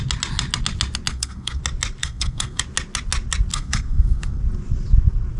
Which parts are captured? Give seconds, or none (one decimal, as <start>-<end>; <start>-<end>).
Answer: 0.0-1.1; 1.6-2.0; 2.6-3.5; 4.4-5.4